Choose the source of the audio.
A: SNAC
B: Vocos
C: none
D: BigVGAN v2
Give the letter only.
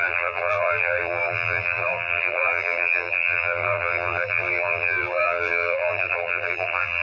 D